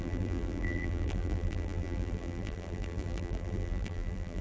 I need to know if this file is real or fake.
fake